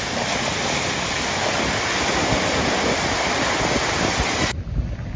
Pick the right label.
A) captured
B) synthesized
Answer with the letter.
A